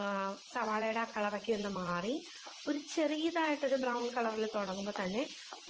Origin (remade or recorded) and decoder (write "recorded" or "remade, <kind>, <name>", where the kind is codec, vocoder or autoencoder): remade, vocoder, Vocos